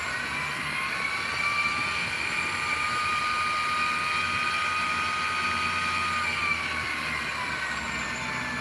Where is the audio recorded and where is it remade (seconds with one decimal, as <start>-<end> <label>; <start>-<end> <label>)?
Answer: 0.0-2.0 recorded; 2.0-3.2 remade; 3.2-8.6 recorded